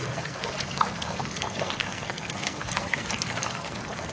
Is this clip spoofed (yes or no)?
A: yes